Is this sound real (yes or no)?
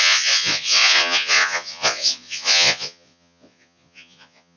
no